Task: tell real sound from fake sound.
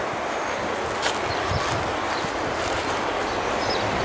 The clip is real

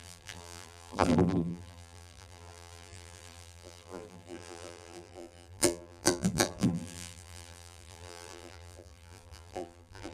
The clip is fake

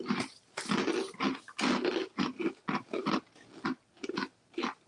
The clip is real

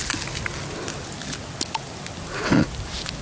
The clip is real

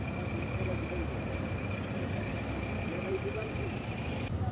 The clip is fake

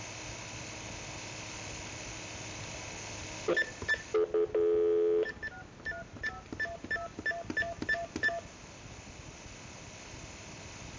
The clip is real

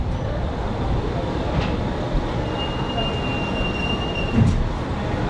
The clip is real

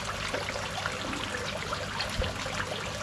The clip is real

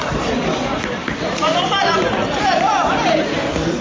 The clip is fake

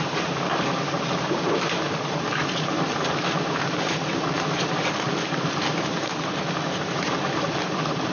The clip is fake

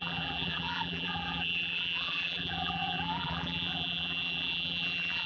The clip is fake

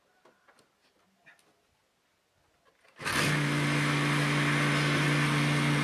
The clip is real